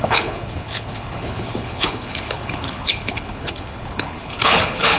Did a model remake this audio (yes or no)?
yes